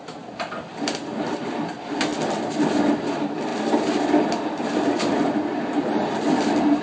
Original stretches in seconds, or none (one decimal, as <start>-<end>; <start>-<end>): 1.0-1.5; 2.1-2.9; 3.5-5.8